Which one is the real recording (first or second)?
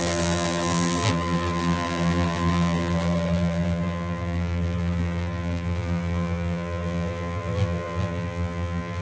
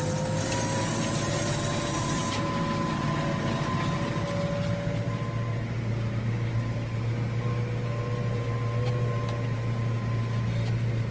second